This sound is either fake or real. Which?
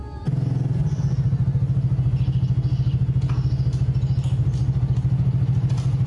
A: real